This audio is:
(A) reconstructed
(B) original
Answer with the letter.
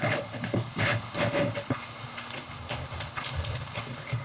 A